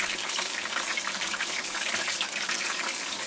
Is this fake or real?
fake